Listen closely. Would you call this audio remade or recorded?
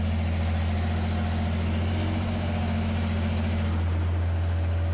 recorded